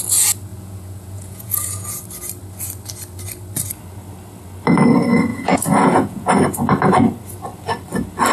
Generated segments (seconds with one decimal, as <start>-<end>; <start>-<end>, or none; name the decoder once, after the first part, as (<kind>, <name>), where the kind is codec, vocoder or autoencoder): 0.5-2.0 (vocoder, Vocos); 5.3-6.3